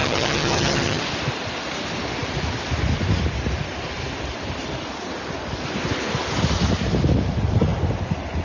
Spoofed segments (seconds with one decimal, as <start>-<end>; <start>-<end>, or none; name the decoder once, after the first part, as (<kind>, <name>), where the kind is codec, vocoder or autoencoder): 0.0-1.0 (vocoder, HiFi-GAN)